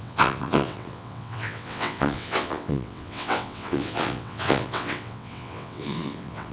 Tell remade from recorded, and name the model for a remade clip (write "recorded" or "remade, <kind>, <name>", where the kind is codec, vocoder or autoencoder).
remade, vocoder, WaveNeXt